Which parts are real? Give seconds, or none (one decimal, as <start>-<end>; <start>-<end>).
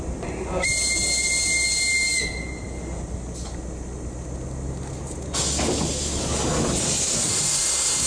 0.0-7.3